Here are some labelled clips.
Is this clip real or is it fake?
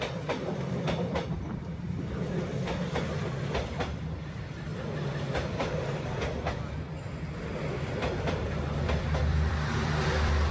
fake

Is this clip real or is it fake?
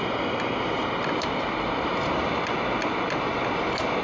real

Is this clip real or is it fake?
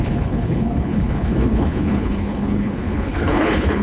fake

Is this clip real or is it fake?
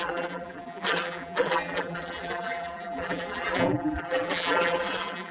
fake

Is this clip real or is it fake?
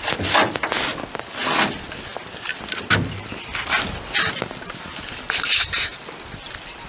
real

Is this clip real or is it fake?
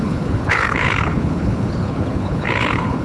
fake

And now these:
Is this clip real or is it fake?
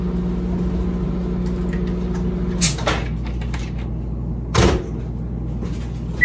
real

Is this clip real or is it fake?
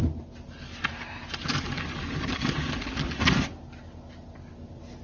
real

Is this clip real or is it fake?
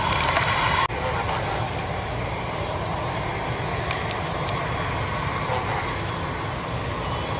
real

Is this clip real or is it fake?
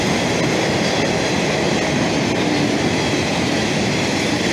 real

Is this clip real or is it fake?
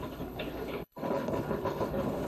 fake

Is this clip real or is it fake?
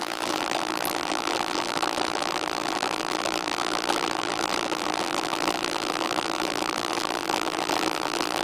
fake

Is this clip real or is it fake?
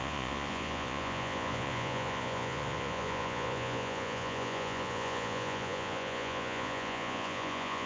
fake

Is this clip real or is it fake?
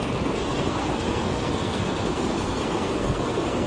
fake